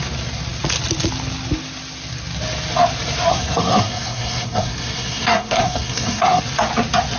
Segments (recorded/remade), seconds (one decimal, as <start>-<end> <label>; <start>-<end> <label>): 0.0-3.3 recorded; 3.3-6.4 remade; 6.4-7.2 recorded